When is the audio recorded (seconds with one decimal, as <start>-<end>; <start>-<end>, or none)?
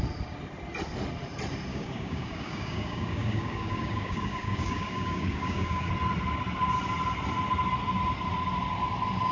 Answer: 0.0-1.7; 5.9-9.3